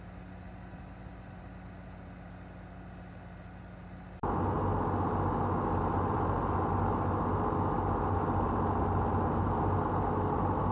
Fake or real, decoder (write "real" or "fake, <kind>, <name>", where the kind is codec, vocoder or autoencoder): real